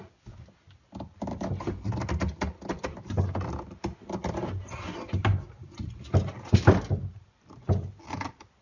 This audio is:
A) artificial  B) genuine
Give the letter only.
B